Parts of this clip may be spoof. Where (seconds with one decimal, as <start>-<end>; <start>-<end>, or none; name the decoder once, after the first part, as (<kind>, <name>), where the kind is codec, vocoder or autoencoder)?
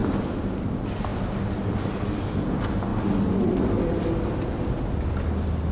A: 2.9-3.8 (vocoder, BigVGAN v2)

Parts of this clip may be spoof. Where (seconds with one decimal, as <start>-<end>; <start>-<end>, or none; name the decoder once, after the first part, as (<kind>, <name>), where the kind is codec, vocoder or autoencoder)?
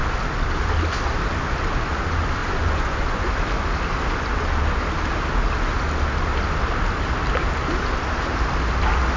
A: 2.4-3.3 (vocoder, Vocos)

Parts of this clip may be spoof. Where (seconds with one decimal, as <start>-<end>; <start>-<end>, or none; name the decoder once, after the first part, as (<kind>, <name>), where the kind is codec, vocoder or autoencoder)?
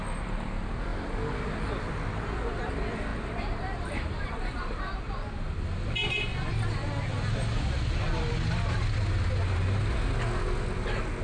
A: 3.1-5.0 (vocoder, BigVGAN v2)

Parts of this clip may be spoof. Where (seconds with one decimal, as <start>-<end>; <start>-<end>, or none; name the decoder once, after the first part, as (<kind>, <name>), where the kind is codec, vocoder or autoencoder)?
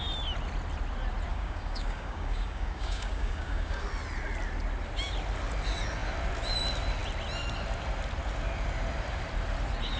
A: 1.3-3.8 (codec, DAC)